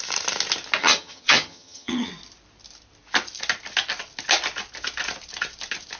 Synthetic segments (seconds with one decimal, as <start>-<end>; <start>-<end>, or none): 0.8-2.1